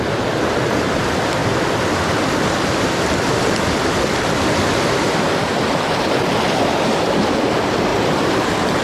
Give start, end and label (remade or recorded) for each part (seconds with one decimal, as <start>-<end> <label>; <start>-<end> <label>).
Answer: 0.0-7.9 recorded; 7.9-8.8 remade